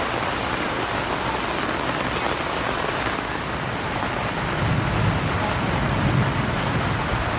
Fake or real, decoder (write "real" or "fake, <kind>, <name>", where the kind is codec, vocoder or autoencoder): real